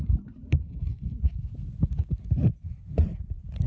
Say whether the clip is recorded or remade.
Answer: recorded